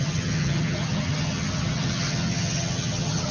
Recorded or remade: remade